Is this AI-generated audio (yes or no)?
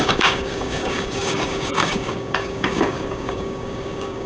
yes